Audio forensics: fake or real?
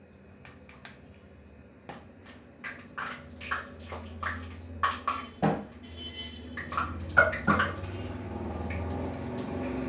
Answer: real